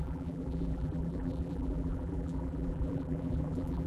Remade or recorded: remade